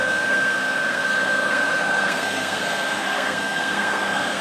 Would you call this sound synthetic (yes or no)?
yes